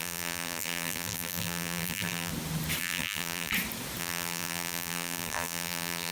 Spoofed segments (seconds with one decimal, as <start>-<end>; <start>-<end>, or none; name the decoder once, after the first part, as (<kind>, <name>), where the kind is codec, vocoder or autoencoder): 0.0-2.3 (vocoder, BigVGAN v2); 2.8-3.5; 4.0-6.1